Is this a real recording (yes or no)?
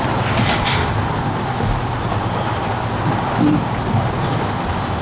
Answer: yes